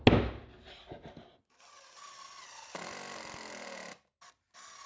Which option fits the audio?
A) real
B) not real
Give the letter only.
A